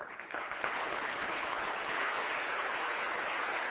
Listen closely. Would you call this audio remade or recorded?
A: remade